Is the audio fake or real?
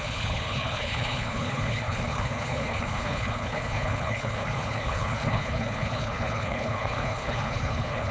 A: fake